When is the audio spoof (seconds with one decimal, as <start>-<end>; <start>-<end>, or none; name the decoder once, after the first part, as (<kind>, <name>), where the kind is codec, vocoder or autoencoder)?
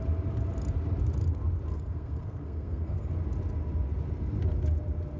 1.7-3.1 (codec, SNAC)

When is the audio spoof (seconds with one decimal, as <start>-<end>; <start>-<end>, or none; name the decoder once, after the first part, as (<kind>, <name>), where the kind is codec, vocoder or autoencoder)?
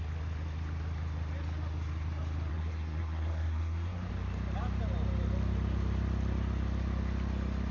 2.5-4.1 (codec, SNAC)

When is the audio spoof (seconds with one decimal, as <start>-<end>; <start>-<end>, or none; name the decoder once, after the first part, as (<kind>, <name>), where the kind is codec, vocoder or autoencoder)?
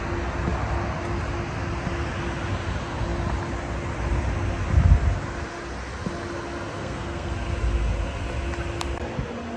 6.8-7.3 (codec, SNAC)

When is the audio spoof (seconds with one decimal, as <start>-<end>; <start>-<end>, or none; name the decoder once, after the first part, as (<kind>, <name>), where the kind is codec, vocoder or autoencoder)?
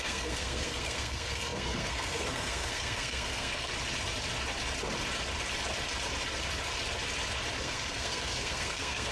0.0-3.7 (codec, SNAC); 7.6-9.1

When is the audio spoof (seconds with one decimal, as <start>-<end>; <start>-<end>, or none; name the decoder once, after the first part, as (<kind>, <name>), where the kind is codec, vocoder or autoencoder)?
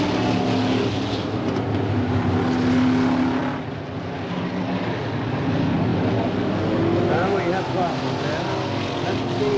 none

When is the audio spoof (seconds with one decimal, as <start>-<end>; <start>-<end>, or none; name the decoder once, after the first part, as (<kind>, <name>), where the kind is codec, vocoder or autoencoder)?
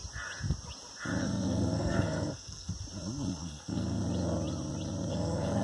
1.2-2.7 (codec, SNAC); 3.4-4.0; 5.1-5.6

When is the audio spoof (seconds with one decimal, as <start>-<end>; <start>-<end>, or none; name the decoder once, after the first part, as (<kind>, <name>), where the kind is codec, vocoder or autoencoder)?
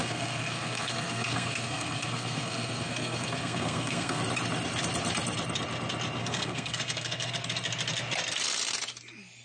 0.0-4.2 (codec, SNAC); 6.2-7.3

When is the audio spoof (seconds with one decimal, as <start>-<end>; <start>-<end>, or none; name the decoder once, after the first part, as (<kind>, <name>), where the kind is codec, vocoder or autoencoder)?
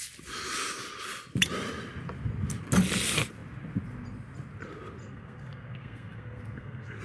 5.0-7.0 (codec, SNAC)